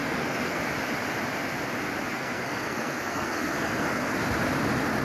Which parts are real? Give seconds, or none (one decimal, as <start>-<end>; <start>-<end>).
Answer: 0.6-2.1; 4.2-5.0